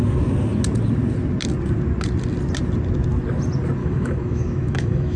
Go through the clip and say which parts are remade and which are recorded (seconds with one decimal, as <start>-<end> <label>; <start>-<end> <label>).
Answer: 0.0-3.8 recorded; 3.8-5.2 remade